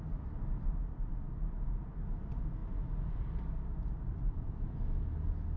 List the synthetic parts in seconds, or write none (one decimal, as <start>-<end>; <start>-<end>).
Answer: 4.1-4.8